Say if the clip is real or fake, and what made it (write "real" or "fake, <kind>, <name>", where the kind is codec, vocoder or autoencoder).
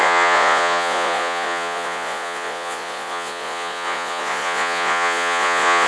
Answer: fake, vocoder, Vocos